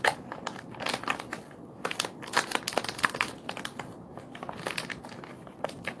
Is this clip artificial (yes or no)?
no